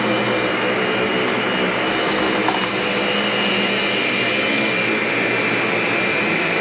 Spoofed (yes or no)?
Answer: no